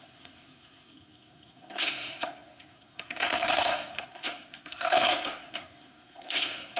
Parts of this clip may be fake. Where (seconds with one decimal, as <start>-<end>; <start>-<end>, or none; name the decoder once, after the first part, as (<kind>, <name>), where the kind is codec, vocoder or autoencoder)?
0.0-6.8 (codec, SNAC)